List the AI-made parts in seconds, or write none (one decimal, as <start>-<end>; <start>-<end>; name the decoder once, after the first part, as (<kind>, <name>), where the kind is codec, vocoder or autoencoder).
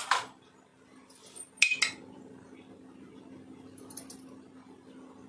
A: none